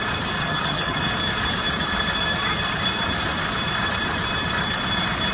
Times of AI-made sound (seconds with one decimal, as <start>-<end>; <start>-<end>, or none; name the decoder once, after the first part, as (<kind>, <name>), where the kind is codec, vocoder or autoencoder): 0.4-1.0 (vocoder, HiFi-GAN)